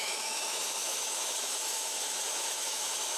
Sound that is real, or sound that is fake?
fake